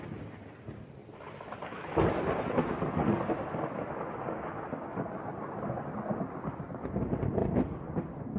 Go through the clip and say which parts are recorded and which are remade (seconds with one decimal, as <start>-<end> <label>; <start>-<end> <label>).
0.0-8.4 recorded